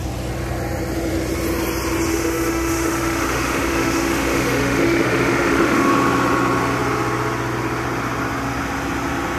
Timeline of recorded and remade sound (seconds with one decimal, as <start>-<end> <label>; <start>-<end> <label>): 0.0-2.1 recorded; 2.1-5.9 remade; 5.9-9.4 recorded